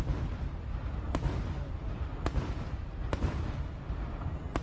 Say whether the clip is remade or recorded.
recorded